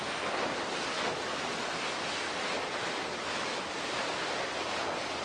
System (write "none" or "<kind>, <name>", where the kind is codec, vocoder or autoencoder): none